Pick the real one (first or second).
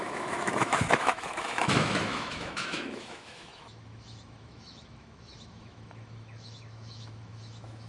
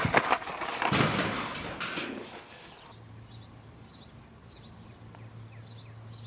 second